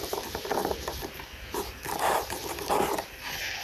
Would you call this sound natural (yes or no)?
yes